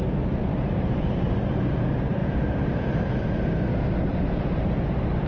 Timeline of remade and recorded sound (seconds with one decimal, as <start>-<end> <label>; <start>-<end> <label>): 0.0-0.5 recorded; 0.5-1.6 remade; 1.6-2.2 recorded; 2.2-3.2 remade; 3.2-5.3 recorded